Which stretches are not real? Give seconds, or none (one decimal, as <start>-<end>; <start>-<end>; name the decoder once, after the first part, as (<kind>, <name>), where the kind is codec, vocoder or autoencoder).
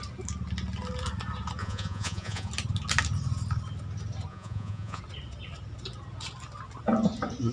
1.6-2.5 (vocoder, Vocos); 4.3-5.0